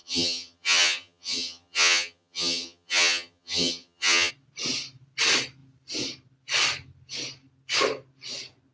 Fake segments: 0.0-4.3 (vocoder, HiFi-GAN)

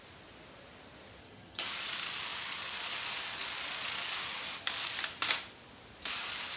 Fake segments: 1.2-1.7 (vocoder, HiFi-GAN)

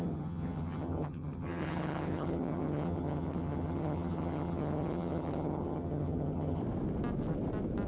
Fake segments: 0.0-6.6 (vocoder, HiFi-GAN)

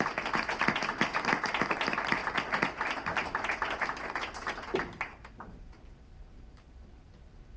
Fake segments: none

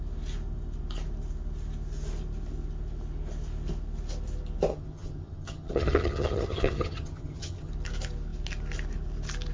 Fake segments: 4.7-7.7 (vocoder, HiFi-GAN)